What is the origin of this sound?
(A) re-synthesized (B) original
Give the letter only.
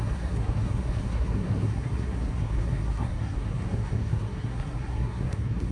A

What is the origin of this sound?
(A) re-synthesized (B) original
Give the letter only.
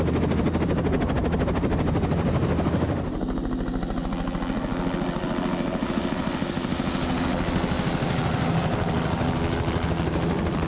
B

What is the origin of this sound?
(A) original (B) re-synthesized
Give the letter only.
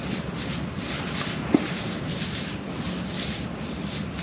A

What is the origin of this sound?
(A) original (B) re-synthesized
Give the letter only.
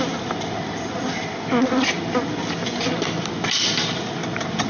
A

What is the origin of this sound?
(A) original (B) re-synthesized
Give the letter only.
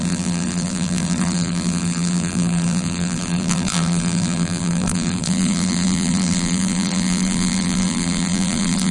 B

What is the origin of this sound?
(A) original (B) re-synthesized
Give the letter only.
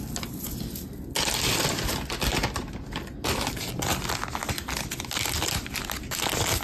A